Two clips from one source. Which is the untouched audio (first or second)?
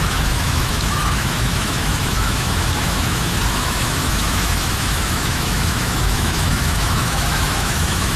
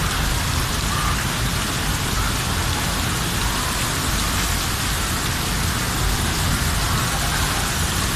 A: second